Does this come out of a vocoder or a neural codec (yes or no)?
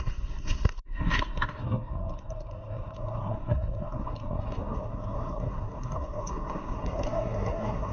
yes